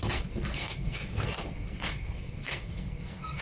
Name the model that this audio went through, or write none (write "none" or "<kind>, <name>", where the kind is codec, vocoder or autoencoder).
codec, SNAC